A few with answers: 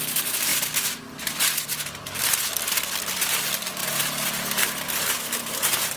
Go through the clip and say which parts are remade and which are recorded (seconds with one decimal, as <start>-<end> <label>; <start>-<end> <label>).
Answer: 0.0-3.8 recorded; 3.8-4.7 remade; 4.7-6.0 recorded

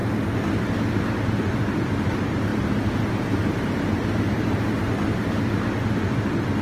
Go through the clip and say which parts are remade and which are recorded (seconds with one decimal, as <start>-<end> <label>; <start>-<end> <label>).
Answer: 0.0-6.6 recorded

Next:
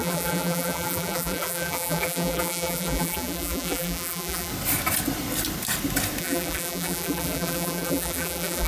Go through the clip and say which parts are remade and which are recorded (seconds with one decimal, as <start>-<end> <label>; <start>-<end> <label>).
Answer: 0.0-4.5 remade; 4.5-6.2 recorded; 6.2-8.7 remade